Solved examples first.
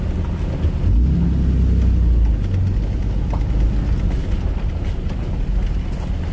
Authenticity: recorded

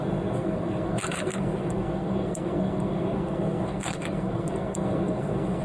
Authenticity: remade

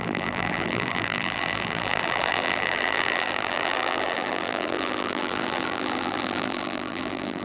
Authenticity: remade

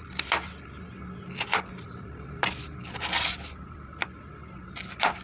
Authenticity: recorded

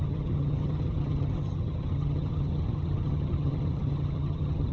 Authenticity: remade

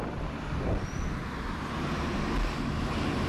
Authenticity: recorded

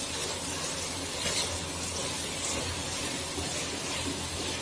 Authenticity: recorded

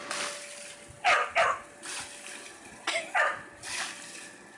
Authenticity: recorded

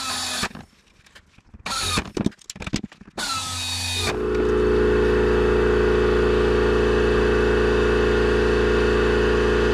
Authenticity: recorded